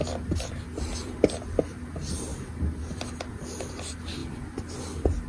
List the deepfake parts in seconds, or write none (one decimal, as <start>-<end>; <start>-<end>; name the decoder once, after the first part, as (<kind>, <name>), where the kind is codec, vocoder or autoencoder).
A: 1.0-1.6 (vocoder, BigVGAN v2); 4.2-5.3